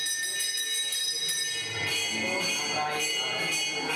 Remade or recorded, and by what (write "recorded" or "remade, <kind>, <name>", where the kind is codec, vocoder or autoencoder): recorded